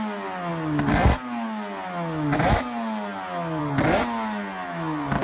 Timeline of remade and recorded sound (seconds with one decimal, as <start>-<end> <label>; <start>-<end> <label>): 0.0-5.2 recorded